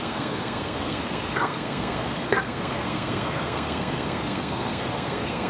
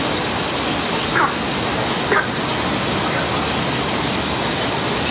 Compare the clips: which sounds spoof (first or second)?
first